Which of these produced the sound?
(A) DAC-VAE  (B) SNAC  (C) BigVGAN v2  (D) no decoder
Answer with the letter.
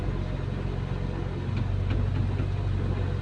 D